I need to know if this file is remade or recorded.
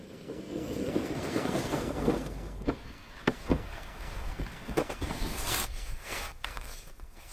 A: remade